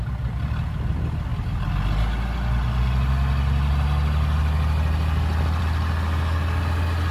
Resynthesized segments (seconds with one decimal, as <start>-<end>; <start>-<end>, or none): none

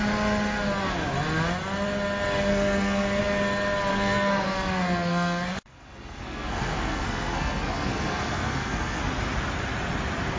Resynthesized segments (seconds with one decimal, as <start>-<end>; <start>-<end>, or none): 2.5-3.2; 3.9-9.0

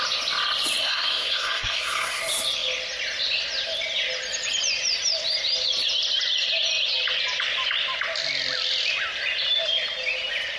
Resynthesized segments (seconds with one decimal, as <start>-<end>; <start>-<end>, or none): 0.8-2.2

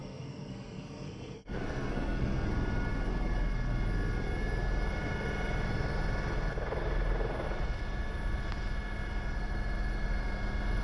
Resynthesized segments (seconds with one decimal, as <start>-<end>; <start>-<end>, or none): 0.0-2.5

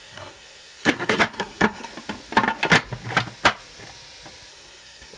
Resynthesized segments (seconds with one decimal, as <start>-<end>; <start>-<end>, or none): 0.0-1.9; 4.5-5.2

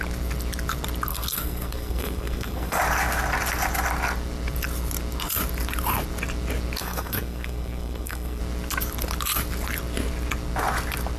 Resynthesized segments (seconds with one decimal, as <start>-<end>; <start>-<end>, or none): 1.1-2.8; 6.8-8.4

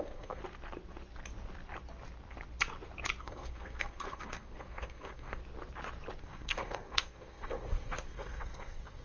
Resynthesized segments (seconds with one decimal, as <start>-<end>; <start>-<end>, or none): 0.0-0.4; 3.2-5.4; 6.2-9.0

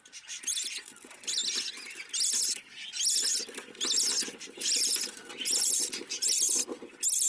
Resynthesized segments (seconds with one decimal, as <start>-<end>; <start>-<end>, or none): none